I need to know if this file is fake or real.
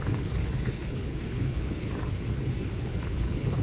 fake